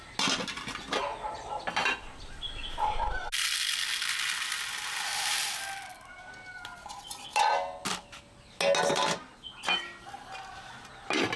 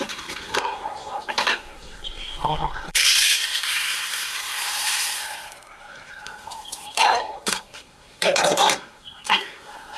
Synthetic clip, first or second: second